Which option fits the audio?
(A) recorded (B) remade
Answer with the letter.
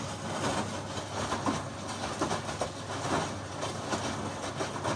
A